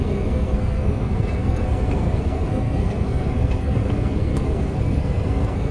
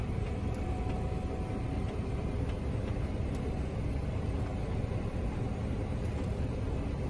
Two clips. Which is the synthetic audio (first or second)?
first